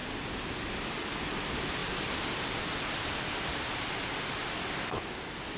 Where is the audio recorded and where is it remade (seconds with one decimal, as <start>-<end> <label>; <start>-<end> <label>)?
0.0-0.8 remade; 0.8-1.8 recorded; 1.8-5.6 remade